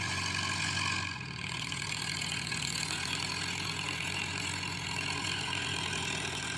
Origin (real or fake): fake